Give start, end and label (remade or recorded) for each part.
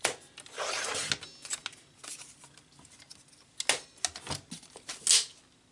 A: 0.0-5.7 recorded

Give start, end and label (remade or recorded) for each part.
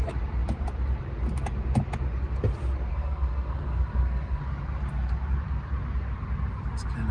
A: 0.0-2.9 recorded; 2.9-4.4 remade; 4.4-7.1 recorded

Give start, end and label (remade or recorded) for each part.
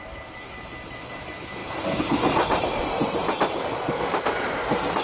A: 0.0-5.0 recorded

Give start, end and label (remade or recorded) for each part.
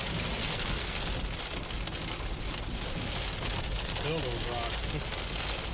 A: 0.0-0.4 recorded; 0.4-1.0 remade; 1.0-5.7 recorded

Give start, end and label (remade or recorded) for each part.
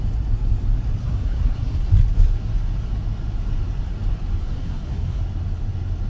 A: 0.0-1.0 recorded; 1.0-1.9 remade; 1.9-4.4 recorded; 4.4-5.2 remade; 5.2-6.1 recorded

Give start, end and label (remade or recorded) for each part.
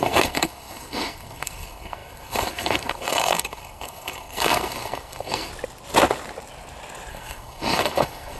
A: 0.0-5.5 remade; 5.5-7.1 recorded; 7.1-8.4 remade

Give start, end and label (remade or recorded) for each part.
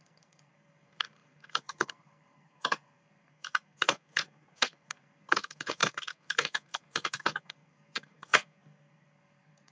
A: 0.0-9.7 remade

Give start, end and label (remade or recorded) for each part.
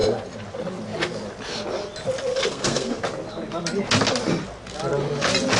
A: 0.0-2.3 recorded; 2.3-3.0 remade; 3.0-5.6 recorded